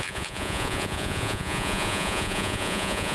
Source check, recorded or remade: remade